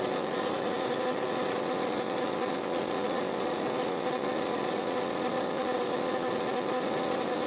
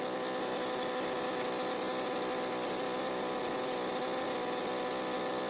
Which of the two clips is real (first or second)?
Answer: second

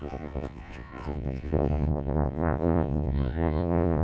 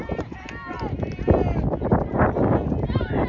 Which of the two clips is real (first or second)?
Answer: second